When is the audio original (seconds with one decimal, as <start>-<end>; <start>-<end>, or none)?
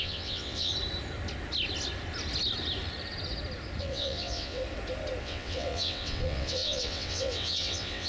0.7-3.8; 4.6-5.2